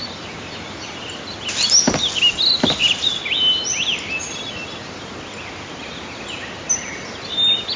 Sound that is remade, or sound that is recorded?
recorded